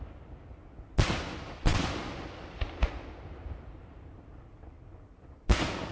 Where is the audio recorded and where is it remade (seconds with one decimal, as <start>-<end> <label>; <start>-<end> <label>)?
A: 0.0-5.9 recorded